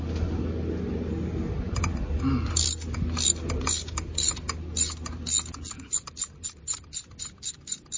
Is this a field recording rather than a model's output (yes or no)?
yes